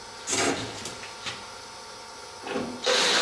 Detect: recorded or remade recorded